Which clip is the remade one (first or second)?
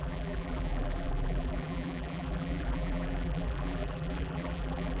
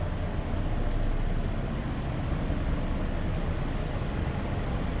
first